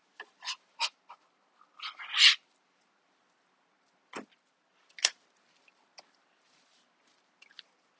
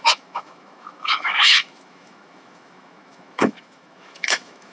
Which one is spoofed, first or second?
second